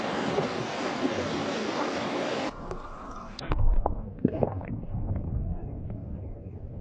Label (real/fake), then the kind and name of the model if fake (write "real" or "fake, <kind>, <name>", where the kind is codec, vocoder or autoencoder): fake, codec, DAC